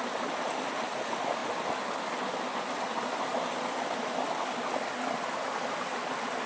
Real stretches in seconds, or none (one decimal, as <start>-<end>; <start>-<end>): 0.0-6.5